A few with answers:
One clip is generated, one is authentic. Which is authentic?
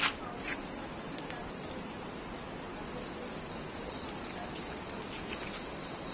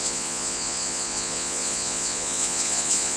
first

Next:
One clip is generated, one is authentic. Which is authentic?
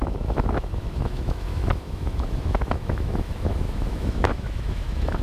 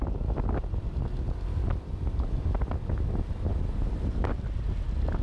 second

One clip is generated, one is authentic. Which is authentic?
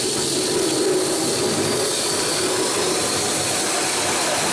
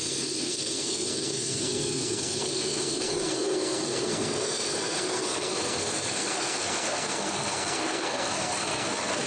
first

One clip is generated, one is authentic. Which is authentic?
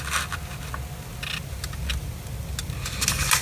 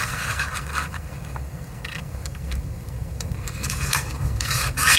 first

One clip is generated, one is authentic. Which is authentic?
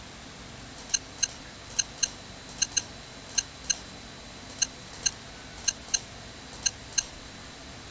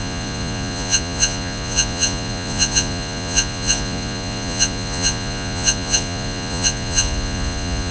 first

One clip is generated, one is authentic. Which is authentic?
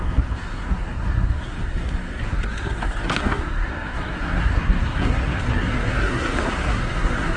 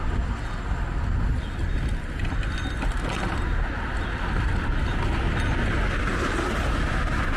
second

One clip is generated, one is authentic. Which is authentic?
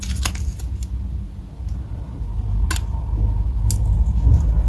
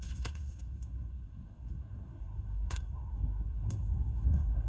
first